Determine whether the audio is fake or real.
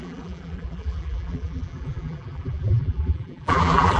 fake